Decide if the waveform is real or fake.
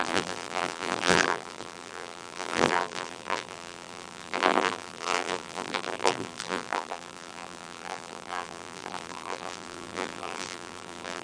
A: fake